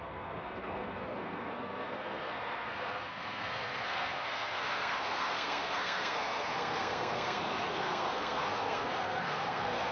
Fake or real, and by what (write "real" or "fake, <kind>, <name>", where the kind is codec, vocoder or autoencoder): fake, codec, SNAC